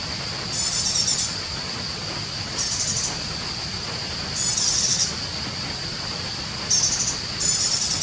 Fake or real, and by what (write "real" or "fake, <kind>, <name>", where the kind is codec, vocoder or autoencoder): real